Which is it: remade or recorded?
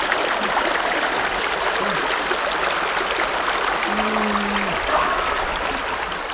recorded